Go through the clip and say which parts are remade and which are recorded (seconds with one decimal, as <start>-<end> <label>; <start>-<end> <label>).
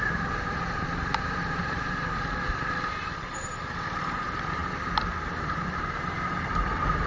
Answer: 0.0-7.1 recorded